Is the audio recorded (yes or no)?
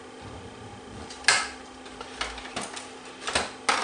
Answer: yes